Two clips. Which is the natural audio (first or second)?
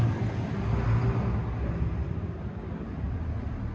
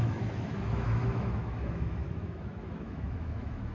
first